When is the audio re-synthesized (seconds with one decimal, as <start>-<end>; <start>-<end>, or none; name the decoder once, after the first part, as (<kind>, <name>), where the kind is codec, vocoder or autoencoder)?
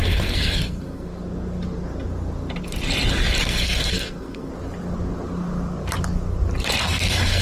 0.0-1.1 (codec, SNAC); 3.4-4.5; 6.8-7.4